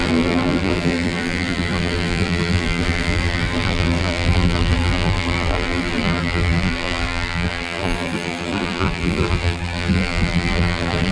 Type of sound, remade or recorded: remade